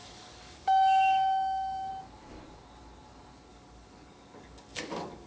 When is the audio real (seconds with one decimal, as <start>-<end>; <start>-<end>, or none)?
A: 1.9-3.5